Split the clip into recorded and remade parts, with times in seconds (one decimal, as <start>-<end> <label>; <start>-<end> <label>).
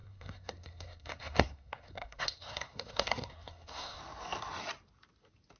0.0-4.0 remade; 4.0-5.6 recorded